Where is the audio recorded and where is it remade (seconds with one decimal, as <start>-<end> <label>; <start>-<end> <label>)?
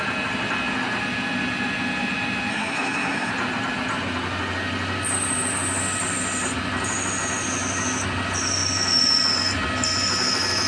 0.0-2.5 recorded; 2.5-3.3 remade; 3.3-10.7 recorded